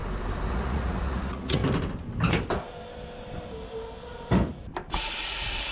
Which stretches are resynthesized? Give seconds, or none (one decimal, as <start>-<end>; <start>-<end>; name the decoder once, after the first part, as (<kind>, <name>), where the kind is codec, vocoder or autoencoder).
0.5-1.6 (vocoder, Vocos); 4.9-5.7